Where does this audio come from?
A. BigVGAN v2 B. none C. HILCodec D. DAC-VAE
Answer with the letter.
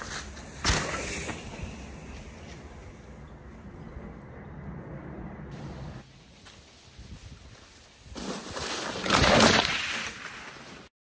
B